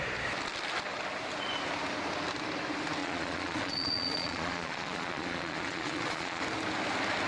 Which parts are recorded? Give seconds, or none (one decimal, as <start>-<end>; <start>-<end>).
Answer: 0.0-3.0; 6.4-7.3